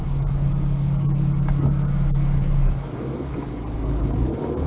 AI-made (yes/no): yes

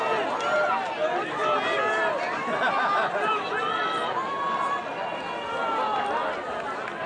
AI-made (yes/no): no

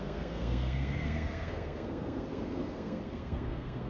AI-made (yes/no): yes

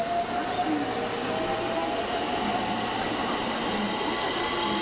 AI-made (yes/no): no